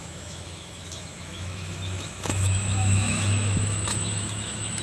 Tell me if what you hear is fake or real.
fake